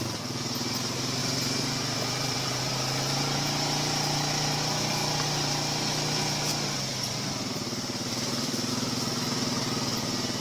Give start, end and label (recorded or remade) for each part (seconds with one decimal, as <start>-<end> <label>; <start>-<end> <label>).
0.0-1.2 recorded; 1.2-2.7 remade; 2.7-6.5 recorded; 6.5-8.7 remade; 8.7-10.4 recorded